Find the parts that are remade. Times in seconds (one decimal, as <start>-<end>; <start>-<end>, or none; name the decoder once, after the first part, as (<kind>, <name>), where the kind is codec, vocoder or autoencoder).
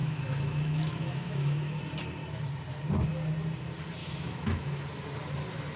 0.0-1.8 (autoencoder, DAC-VAE); 4.0-4.8